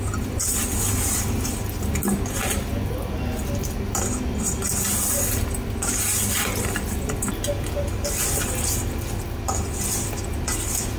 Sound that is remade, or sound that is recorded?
recorded